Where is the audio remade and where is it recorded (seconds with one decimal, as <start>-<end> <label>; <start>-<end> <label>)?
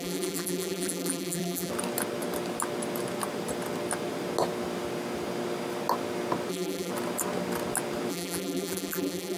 0.0-1.7 remade; 1.7-6.5 recorded; 6.5-6.9 remade; 6.9-8.1 recorded; 8.1-9.4 remade